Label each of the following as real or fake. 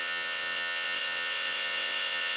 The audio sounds fake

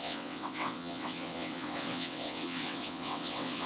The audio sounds fake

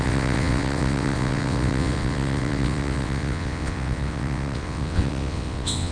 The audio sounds fake